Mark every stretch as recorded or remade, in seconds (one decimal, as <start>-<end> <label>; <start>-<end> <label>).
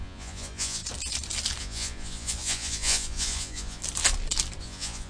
0.0-0.8 remade; 0.8-1.6 recorded; 1.6-3.8 remade; 3.8-4.6 recorded; 4.6-5.1 remade